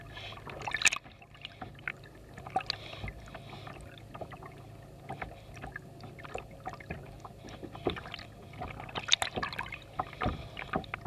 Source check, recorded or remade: recorded